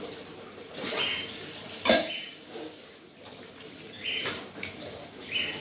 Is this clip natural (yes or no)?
no